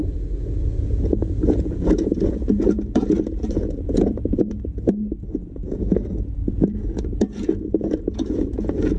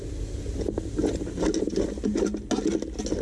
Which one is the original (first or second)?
second